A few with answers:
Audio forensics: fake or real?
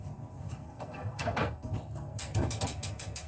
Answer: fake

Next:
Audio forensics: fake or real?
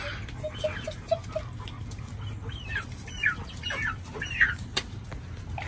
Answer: real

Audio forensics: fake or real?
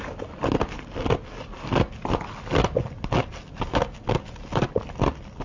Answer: real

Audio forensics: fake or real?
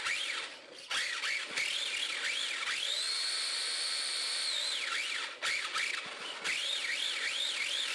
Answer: real